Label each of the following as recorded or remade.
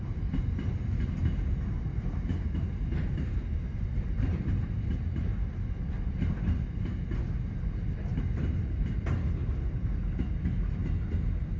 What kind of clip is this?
recorded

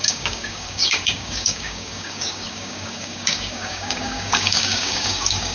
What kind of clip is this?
remade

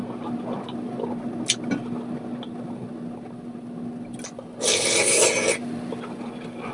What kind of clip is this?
recorded